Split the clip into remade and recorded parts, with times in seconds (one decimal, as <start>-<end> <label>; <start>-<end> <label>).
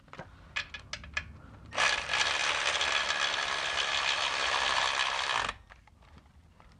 0.0-6.8 recorded